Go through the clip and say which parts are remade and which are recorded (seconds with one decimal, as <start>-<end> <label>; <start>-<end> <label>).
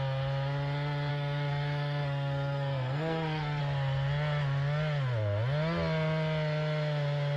0.0-1.1 recorded; 1.1-3.6 remade; 3.6-7.4 recorded